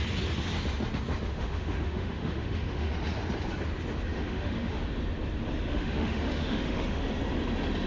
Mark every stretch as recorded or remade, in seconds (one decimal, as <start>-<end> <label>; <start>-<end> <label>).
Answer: 0.0-1.3 recorded; 1.3-2.9 remade; 2.9-4.1 recorded; 4.1-4.8 remade; 4.8-5.7 recorded; 5.7-7.0 remade; 7.0-7.9 recorded